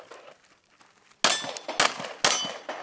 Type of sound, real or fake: real